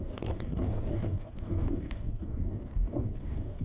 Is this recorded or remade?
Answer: remade